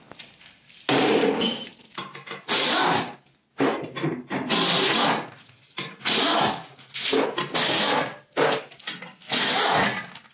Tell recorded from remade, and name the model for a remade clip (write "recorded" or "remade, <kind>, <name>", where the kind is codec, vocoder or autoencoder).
recorded